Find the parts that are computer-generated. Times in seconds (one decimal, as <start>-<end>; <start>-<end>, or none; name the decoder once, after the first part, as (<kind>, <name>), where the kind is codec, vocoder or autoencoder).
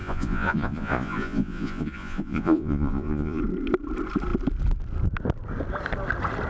0.0-3.4 (vocoder, Vocos)